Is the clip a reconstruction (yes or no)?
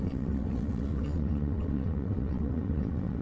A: yes